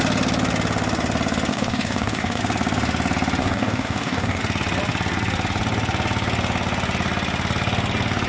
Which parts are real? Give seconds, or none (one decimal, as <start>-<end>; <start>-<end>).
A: 0.0-1.5; 2.4-3.4; 4.4-8.3